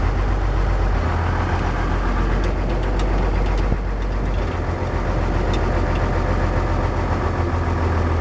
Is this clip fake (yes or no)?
no